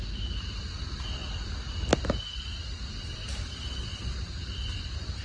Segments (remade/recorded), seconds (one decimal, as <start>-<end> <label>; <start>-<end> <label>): 0.0-5.2 recorded